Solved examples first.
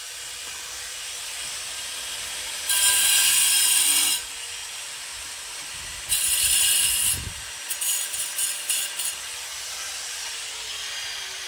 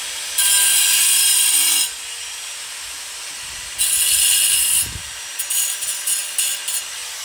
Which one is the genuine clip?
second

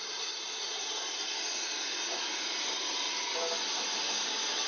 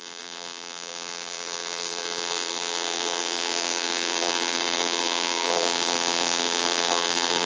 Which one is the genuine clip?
first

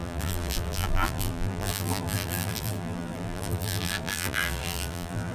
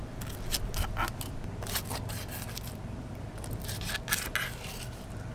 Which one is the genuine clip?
second